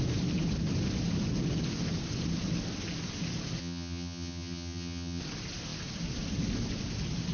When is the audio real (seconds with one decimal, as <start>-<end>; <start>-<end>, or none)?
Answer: 0.0-3.6; 5.2-7.3